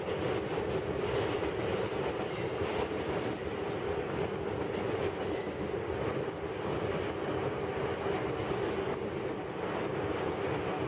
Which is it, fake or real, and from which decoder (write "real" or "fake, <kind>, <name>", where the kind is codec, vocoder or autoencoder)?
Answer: real